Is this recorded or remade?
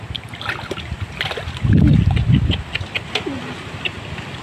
recorded